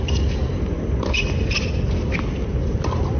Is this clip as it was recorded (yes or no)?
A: yes